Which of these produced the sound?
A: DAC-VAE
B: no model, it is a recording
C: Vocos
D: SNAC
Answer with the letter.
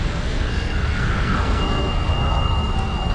D